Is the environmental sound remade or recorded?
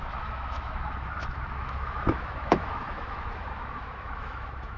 remade